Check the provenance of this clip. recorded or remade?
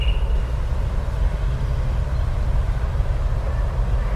recorded